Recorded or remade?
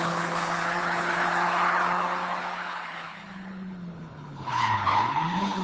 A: remade